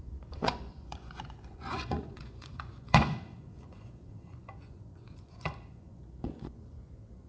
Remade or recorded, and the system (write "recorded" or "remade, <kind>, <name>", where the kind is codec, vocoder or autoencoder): remade, vocoder, Vocos